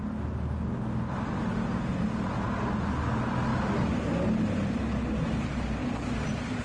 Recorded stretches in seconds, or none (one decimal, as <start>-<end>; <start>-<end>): 0.0-6.6